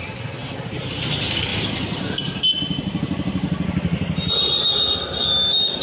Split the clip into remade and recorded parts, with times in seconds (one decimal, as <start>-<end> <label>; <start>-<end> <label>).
0.0-5.8 recorded